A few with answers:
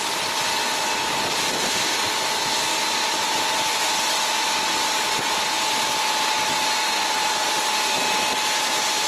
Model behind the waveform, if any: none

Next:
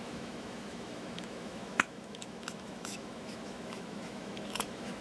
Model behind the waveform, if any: autoencoder, DAC-VAE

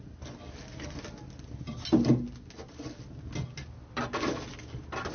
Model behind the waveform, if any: none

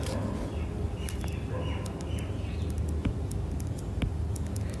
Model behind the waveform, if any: none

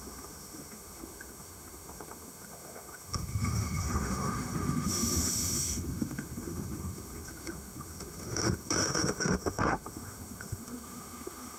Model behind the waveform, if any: autoencoder, DAC-VAE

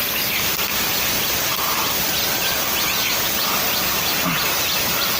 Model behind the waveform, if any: none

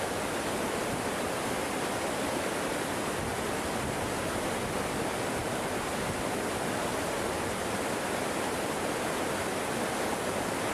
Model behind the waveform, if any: none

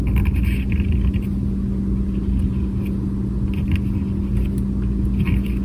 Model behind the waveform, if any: none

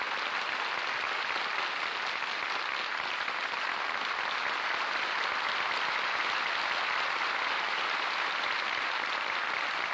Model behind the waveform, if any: none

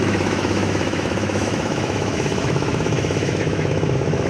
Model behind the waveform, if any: autoencoder, DAC-VAE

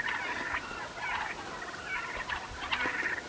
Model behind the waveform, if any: none